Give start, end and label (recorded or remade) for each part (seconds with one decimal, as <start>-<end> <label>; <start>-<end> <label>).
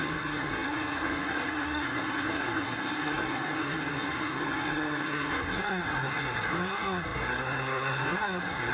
0.0-8.7 remade